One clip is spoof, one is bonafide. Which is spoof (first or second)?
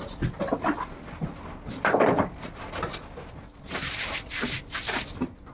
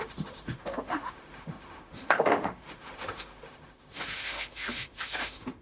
second